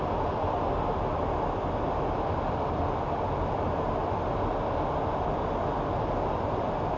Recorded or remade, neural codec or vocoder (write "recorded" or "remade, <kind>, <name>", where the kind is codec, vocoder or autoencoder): recorded